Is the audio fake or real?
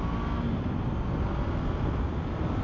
real